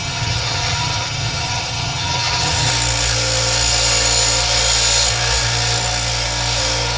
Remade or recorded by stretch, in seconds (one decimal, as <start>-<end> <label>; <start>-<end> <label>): 0.0-2.7 remade; 2.7-7.0 recorded